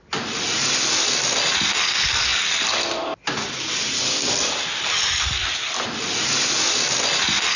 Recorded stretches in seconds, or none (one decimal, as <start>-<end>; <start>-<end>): 0.0-7.6